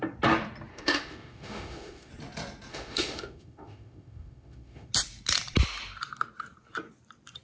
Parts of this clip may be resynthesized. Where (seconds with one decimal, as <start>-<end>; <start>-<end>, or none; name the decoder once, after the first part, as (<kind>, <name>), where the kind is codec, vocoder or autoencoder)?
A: 0.7-2.1 (autoencoder, DAC-VAE); 2.7-4.9